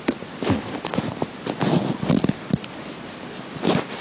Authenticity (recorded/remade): recorded